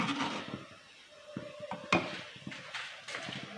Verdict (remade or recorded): recorded